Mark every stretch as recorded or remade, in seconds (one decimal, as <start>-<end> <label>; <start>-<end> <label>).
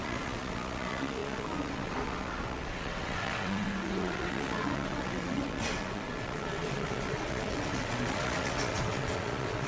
0.0-9.7 remade